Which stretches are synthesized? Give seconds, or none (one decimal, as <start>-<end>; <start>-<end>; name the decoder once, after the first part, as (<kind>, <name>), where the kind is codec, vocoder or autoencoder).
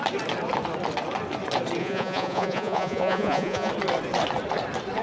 1.8-3.7 (vocoder, Vocos)